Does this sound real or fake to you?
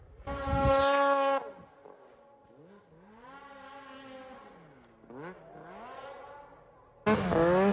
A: real